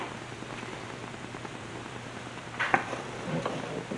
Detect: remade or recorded remade